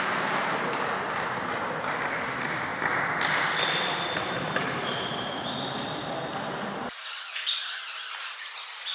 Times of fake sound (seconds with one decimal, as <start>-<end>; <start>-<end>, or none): none